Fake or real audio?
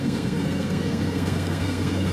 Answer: fake